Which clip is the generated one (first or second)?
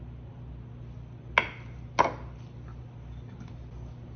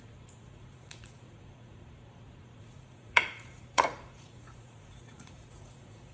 second